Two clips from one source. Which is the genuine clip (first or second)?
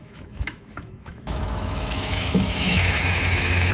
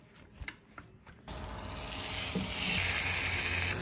second